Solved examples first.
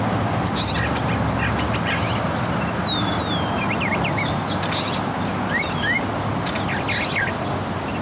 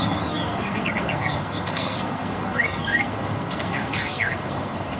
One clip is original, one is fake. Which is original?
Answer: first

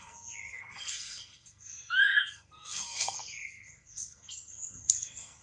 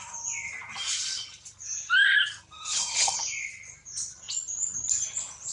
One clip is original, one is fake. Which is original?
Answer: second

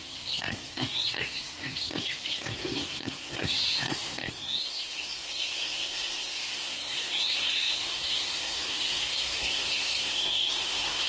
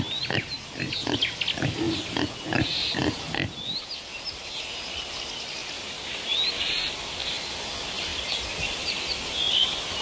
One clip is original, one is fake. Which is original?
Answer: second